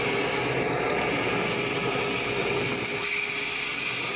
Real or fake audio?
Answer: real